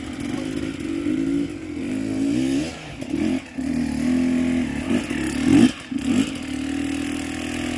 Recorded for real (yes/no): yes